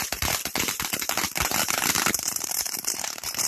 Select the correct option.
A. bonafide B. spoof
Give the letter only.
B